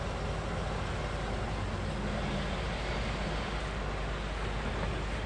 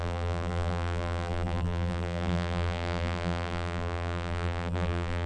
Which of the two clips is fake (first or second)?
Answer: second